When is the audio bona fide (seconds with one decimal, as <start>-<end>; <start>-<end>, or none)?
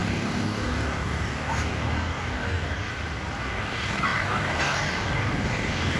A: 2.9-3.4